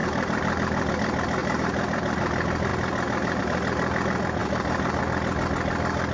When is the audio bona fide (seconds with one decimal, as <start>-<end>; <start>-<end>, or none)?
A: 0.9-1.4; 2.2-4.4; 5.0-6.1